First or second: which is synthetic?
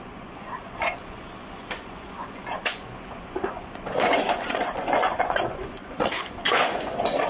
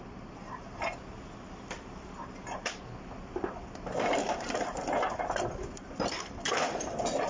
first